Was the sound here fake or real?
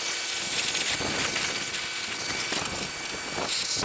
real